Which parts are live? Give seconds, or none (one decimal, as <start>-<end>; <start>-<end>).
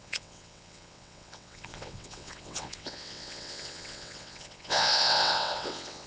none